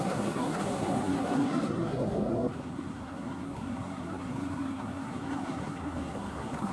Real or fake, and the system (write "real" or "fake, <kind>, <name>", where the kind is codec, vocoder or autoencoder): fake, codec, SNAC